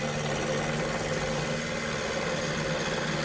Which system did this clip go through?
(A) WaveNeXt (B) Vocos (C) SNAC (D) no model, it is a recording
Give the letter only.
D